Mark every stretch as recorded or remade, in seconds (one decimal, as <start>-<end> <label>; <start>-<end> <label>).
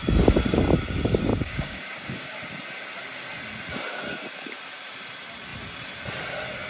0.0-1.3 recorded; 1.3-2.4 remade; 2.4-6.7 recorded